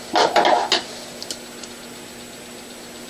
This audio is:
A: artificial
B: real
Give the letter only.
B